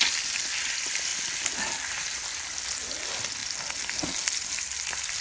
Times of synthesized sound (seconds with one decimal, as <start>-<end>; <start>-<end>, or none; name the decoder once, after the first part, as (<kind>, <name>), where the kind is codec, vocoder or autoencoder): none